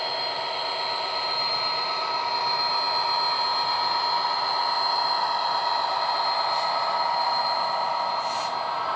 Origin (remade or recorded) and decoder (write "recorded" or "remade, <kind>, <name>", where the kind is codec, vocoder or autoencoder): recorded